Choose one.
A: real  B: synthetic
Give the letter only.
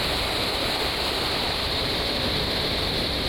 A